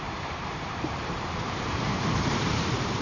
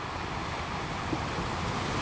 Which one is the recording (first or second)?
second